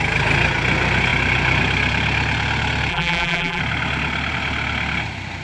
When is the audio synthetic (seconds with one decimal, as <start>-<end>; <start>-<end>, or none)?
2.9-3.6